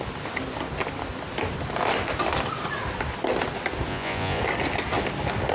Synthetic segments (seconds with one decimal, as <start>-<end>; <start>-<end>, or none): 3.9-4.4